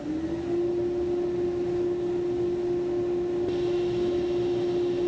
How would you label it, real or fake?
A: real